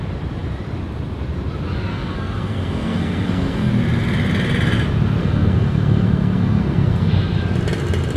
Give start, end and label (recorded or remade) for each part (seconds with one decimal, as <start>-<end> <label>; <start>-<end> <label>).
0.0-1.9 recorded; 1.9-3.7 remade; 3.7-5.2 recorded; 5.2-7.1 remade; 7.1-8.2 recorded